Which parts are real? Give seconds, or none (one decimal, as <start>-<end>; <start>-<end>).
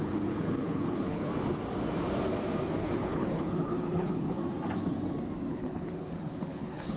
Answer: 1.3-2.8; 4.4-5.5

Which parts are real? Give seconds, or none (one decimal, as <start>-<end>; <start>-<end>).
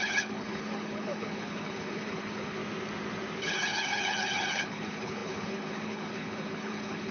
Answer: 2.6-3.4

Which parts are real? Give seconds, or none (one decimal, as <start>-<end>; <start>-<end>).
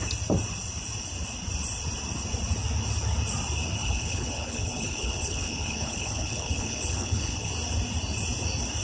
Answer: 0.0-3.8; 7.5-8.8